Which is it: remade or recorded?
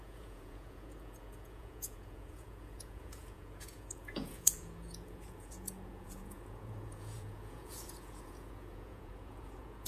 remade